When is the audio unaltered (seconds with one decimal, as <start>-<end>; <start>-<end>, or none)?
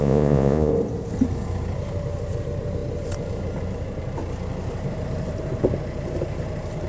0.7-6.9